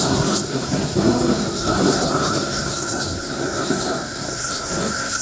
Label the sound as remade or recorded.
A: remade